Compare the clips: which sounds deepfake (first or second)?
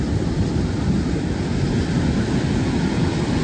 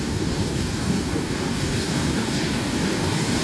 second